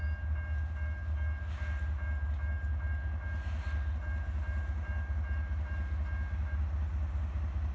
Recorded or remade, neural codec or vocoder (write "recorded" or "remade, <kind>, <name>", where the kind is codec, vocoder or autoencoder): recorded